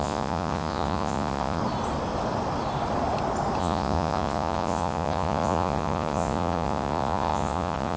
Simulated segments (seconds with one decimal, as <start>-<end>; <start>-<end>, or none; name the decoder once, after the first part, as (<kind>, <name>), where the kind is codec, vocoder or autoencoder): 0.0-1.6 (vocoder, Vocos); 3.6-8.0